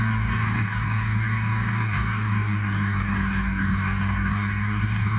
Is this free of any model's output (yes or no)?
no